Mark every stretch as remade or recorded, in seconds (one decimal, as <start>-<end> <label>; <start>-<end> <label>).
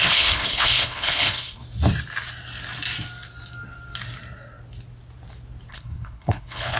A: 0.0-1.6 remade; 1.6-5.7 recorded; 5.7-6.8 remade